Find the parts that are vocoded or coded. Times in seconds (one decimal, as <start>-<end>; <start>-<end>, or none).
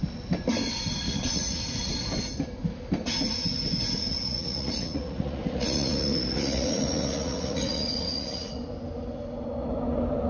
1.0-1.9; 4.1-8.6